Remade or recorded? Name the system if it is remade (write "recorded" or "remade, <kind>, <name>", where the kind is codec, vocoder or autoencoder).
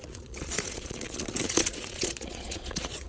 remade, vocoder, Vocos